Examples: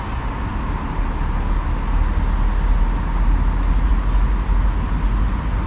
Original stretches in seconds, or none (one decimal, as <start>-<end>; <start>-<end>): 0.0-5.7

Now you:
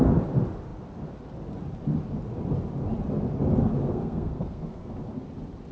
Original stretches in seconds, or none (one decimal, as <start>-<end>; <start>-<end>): 0.0-3.8; 4.9-5.7

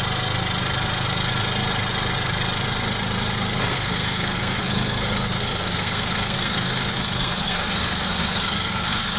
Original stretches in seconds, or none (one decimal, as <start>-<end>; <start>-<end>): 0.0-3.7